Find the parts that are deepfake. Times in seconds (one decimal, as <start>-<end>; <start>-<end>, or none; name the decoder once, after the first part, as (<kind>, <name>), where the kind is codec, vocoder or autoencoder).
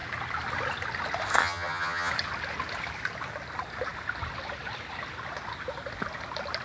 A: 1.4-2.1 (vocoder, HiFi-GAN)